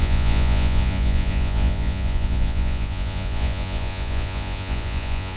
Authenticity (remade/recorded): remade